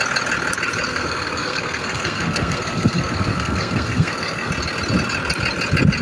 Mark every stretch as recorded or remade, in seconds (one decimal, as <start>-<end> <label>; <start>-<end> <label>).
0.0-0.9 recorded; 0.9-4.5 remade; 4.5-6.0 recorded